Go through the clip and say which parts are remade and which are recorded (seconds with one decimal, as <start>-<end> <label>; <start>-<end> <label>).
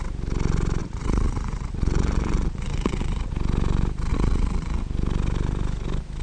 0.0-0.8 recorded; 0.8-3.3 remade; 3.3-4.1 recorded; 4.1-4.8 remade; 4.8-6.2 recorded